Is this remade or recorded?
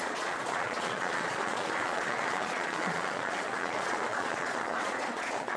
remade